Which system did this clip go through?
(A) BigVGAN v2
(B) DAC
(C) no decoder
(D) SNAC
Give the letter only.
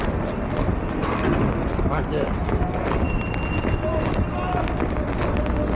C